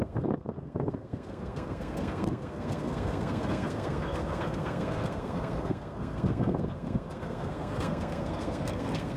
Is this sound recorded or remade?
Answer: remade